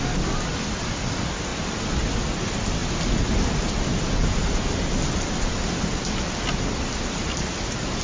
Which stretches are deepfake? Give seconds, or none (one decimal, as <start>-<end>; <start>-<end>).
none